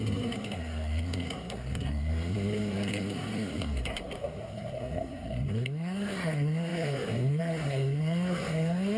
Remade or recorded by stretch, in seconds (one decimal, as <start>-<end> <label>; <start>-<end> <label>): 0.0-9.0 remade

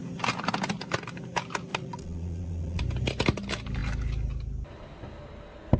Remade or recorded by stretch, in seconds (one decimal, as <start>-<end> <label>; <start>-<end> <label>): 0.0-1.7 recorded; 1.7-2.8 remade; 2.8-5.8 recorded

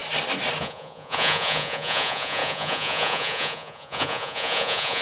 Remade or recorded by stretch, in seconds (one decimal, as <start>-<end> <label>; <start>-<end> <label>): 0.0-0.6 recorded; 0.6-5.0 remade